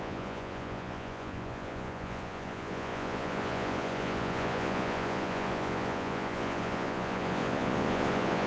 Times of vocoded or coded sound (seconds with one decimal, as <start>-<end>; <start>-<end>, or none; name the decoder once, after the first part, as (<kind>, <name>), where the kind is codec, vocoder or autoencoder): 0.0-8.5 (vocoder, Vocos)